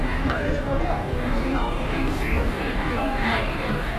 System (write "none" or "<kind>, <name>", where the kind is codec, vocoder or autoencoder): codec, DAC